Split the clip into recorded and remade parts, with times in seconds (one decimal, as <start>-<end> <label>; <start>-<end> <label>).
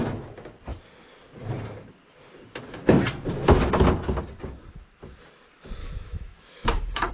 0.0-5.8 recorded; 5.8-7.1 remade